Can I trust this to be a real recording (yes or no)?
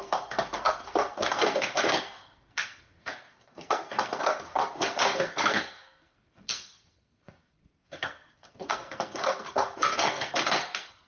no